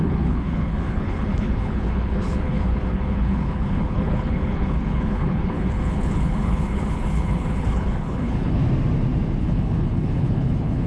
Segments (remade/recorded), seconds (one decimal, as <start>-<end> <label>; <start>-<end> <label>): 0.0-8.6 remade; 8.6-9.4 recorded; 9.4-10.9 remade